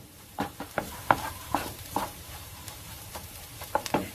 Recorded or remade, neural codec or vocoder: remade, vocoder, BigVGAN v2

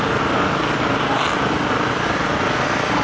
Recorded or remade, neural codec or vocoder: recorded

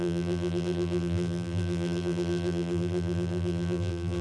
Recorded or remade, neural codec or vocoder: remade, vocoder, BigVGAN v2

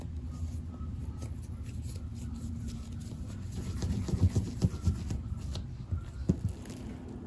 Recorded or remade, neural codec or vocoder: recorded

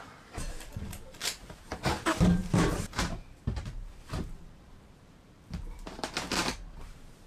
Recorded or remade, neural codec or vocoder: remade, vocoder, BigVGAN v2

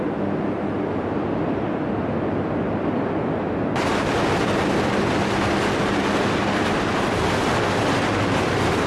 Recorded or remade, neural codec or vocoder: recorded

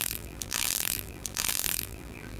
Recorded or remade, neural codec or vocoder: remade, vocoder, BigVGAN v2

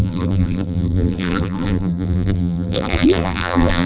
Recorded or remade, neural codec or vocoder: remade, vocoder, BigVGAN v2